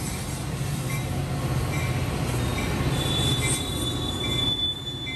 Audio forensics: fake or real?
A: real